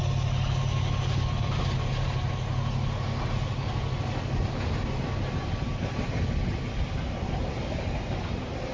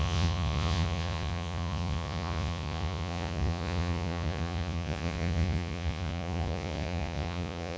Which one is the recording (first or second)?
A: first